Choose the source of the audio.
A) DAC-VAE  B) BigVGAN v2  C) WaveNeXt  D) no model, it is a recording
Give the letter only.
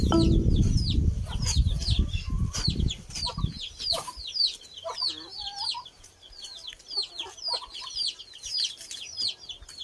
D